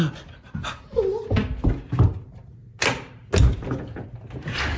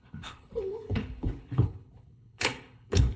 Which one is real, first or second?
first